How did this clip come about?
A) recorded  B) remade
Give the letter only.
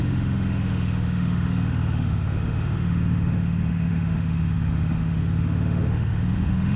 B